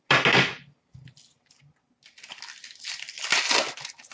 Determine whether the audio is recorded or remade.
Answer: recorded